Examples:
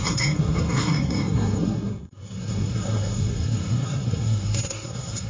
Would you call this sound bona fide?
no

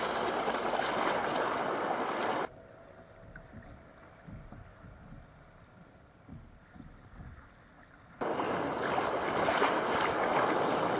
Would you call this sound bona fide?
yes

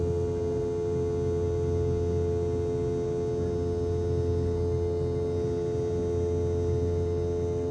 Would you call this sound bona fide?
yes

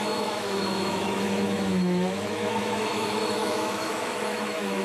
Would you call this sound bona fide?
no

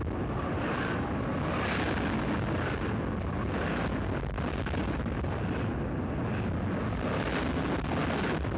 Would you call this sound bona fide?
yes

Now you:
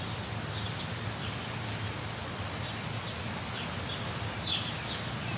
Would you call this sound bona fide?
yes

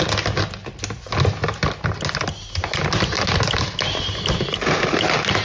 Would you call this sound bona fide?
yes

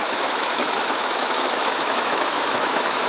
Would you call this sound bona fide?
no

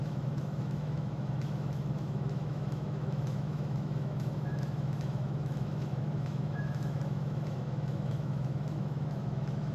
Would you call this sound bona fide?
no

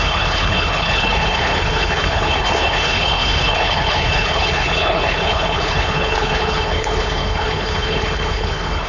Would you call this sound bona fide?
no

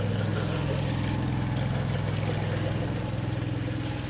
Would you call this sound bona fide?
yes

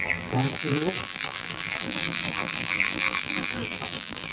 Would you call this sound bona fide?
no